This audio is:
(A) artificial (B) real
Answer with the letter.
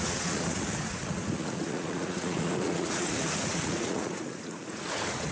A